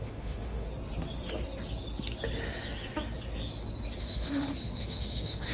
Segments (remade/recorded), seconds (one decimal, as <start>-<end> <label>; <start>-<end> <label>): 0.0-0.7 remade; 0.7-4.0 recorded; 4.0-5.5 remade